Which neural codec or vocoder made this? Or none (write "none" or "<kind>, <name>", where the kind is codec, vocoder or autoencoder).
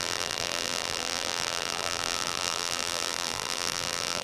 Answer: vocoder, BigVGAN v2